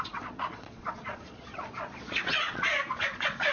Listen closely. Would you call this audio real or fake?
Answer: fake